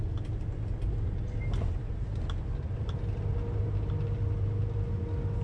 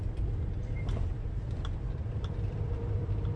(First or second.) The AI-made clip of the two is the second